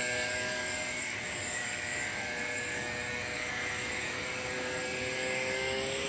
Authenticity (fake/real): fake